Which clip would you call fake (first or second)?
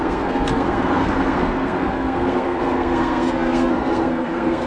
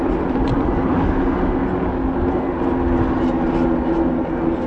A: first